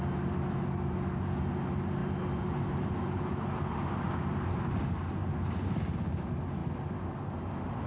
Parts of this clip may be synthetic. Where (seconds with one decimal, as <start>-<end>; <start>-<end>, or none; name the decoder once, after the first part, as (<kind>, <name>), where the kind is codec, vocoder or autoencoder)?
5.2-5.8 (vocoder, BigVGAN v2)